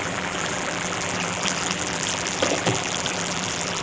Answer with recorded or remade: remade